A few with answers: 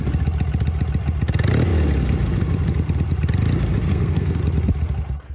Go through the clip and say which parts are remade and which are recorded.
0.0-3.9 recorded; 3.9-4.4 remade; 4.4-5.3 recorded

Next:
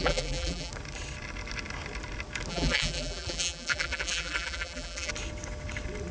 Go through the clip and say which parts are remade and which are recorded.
0.0-0.7 remade; 0.7-2.5 recorded; 2.5-5.1 remade; 5.1-6.1 recorded

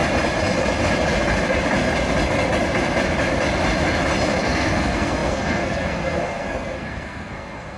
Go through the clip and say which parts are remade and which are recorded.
0.0-4.4 recorded; 4.4-7.8 remade

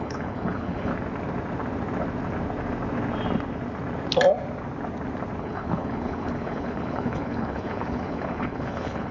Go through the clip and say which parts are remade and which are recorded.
0.0-0.9 remade; 0.9-5.4 recorded; 5.4-9.1 remade

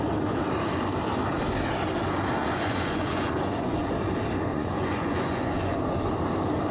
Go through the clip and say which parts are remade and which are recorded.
0.0-2.4 recorded; 2.4-3.9 remade; 3.9-4.5 recorded; 4.5-5.8 remade; 5.8-6.7 recorded

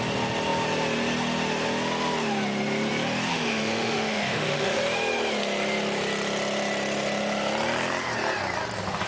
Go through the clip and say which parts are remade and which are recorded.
0.0-3.3 recorded; 3.3-4.8 remade; 4.8-9.1 recorded

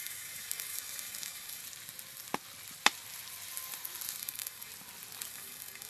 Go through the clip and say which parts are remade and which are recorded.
0.0-1.6 remade; 1.6-4.2 recorded; 4.2-4.7 remade; 4.7-5.3 recorded; 5.3-5.9 remade